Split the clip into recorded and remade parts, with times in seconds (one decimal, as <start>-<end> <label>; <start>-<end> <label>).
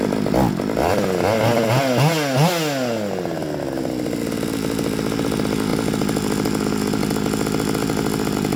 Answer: 0.0-8.6 recorded